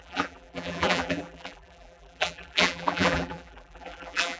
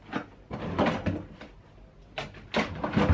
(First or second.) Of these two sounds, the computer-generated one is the first